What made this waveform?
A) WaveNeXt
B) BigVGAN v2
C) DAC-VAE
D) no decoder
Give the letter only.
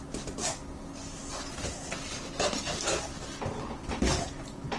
D